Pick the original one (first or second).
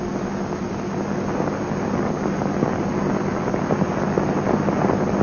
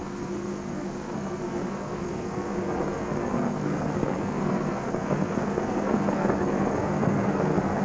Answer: first